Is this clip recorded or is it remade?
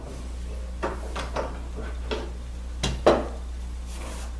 recorded